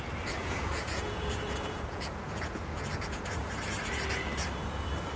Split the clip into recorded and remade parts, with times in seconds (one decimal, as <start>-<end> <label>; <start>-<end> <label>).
0.0-0.4 recorded; 0.4-3.5 remade; 3.5-5.2 recorded